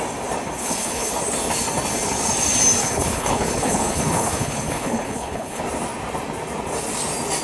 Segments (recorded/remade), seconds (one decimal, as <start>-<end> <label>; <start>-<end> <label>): 0.0-0.6 recorded; 0.6-1.1 remade; 1.1-2.8 recorded; 2.8-5.6 remade; 5.6-7.4 recorded